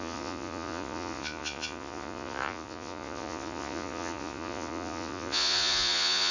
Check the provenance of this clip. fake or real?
fake